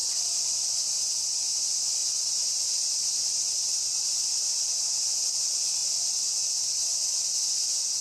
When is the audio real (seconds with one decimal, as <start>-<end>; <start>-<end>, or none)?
1.0-2.0; 4.6-8.0